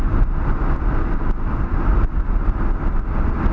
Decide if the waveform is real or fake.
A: real